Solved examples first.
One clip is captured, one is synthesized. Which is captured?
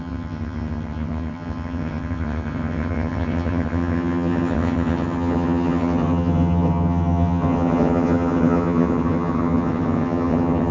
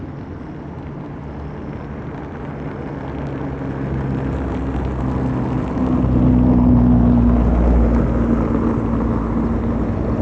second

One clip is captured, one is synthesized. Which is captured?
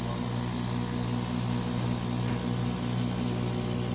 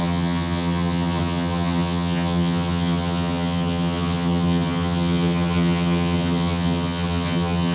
first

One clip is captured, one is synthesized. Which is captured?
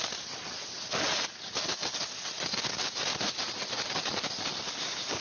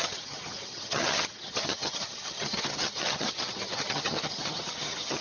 first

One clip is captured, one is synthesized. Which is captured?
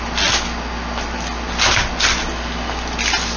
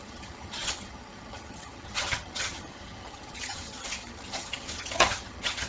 first